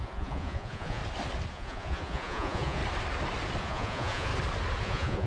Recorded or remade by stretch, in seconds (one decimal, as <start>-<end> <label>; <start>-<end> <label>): 0.0-1.0 remade; 1.0-1.5 recorded; 1.5-2.8 remade; 2.8-3.6 recorded; 3.6-4.3 remade; 4.3-4.8 recorded; 4.8-5.3 remade